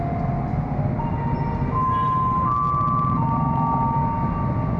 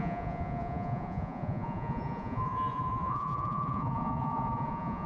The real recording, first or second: first